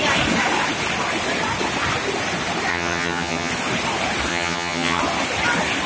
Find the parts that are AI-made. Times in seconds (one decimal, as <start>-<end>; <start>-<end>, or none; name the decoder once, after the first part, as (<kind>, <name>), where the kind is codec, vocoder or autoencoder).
2.7-3.5 (vocoder, HiFi-GAN); 4.3-5.0